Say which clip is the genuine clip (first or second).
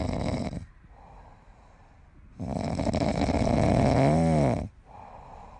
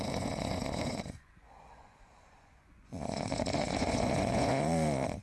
first